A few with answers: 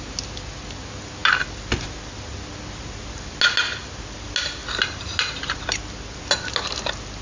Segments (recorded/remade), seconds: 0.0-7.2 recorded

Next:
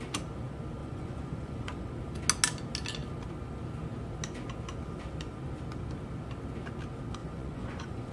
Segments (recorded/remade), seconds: 0.0-0.8 recorded; 0.8-1.9 remade; 1.9-7.2 recorded; 7.2-8.1 remade

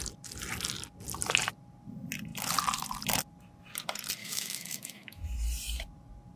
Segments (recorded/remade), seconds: 0.0-4.2 recorded; 4.2-5.2 remade; 5.2-6.4 recorded

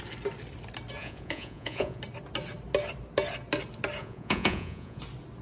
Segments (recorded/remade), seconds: 0.0-1.0 recorded; 1.0-2.0 remade; 2.0-4.0 recorded; 4.0-5.0 remade; 5.0-5.4 recorded

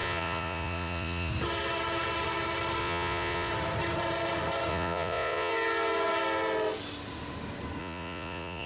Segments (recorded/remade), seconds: 0.0-1.3 remade; 1.3-2.8 recorded; 2.8-3.5 remade; 3.5-4.7 recorded; 4.7-5.5 remade; 5.5-7.8 recorded; 7.8-8.7 remade

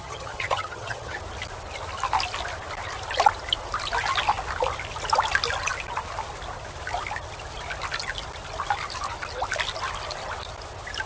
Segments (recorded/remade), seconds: 0.0-1.2 remade; 1.2-11.1 recorded